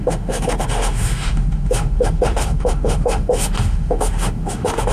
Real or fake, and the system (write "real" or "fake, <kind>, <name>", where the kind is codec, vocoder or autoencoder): fake, autoencoder, DAC-VAE